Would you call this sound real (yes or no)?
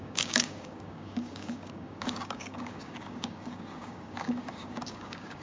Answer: no